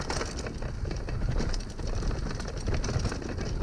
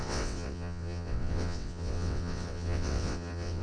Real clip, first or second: first